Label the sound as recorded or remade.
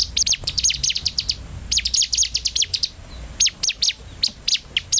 recorded